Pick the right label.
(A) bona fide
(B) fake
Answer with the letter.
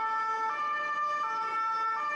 A